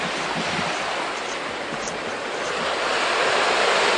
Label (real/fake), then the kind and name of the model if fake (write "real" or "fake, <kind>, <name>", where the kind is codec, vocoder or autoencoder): real